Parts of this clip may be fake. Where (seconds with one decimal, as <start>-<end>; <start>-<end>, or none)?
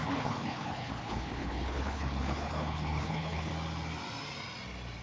0.0-3.5